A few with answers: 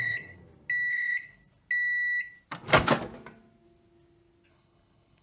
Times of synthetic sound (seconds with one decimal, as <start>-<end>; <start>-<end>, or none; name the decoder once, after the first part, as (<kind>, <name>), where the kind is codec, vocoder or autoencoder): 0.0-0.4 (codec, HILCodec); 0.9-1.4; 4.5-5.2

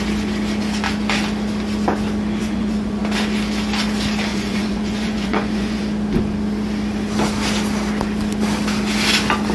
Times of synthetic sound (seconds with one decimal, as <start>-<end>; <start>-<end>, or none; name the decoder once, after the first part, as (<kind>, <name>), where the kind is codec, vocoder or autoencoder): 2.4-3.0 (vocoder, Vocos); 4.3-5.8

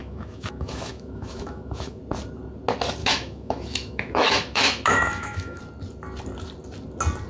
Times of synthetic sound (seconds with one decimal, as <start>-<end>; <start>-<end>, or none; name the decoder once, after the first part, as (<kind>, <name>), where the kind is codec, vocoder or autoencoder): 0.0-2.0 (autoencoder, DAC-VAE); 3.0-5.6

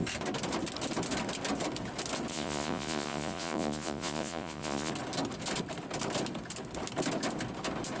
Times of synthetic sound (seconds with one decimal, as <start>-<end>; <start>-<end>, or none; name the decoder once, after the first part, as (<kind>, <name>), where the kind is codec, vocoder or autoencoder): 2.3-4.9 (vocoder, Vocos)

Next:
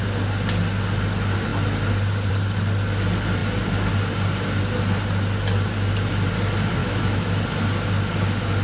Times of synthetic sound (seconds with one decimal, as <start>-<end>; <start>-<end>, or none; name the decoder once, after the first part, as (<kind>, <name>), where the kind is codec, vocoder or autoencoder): 6.8-7.4 (autoencoder, DAC-VAE)

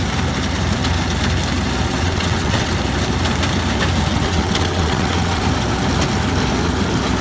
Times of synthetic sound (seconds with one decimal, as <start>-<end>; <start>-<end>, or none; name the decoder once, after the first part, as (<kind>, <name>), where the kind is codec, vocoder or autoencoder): 1.9-2.7 (vocoder, WaveNeXt); 4.1-5.4

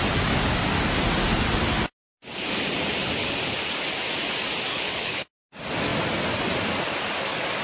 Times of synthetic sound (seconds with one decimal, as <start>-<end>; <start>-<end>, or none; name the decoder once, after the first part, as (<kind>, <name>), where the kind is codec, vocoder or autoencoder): 4.7-5.3 (codec, HILCodec)